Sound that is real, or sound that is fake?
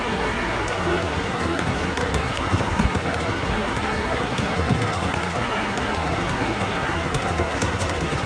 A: fake